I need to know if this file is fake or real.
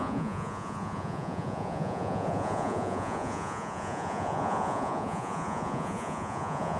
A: fake